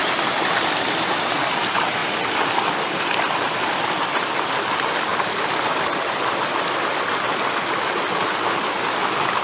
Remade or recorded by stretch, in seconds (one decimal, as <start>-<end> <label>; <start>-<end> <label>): 0.0-9.4 recorded